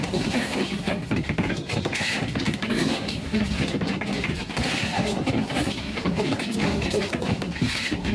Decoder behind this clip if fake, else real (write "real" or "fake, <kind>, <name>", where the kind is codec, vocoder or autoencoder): fake, codec, SNAC